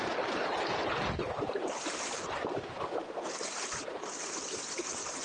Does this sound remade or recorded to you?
recorded